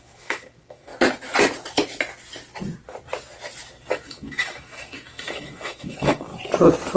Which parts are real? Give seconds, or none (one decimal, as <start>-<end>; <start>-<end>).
0.9-3.9; 6.3-7.0